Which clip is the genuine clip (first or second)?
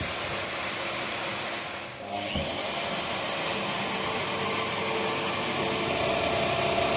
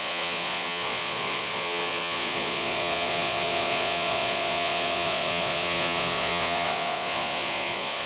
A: first